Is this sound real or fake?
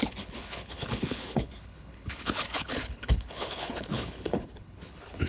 fake